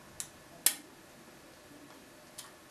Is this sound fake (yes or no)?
no